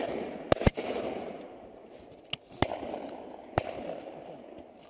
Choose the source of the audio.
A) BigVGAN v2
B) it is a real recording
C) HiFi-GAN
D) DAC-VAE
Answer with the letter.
B